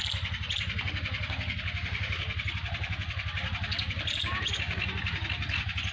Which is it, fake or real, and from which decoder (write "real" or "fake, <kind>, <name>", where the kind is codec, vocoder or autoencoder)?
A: real